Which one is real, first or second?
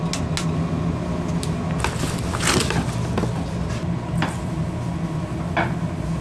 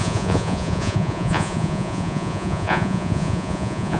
first